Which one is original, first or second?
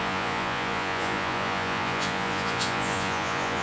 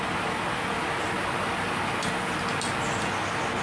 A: second